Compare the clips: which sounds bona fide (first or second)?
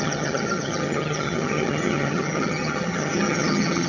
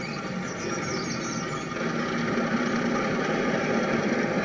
second